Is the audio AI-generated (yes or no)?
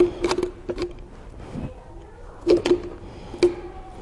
no